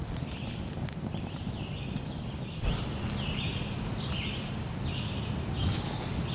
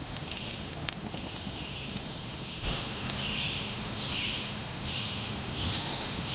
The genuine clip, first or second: first